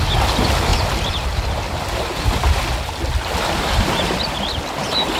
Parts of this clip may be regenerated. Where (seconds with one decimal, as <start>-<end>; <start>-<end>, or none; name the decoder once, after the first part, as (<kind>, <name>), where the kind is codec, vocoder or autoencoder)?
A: none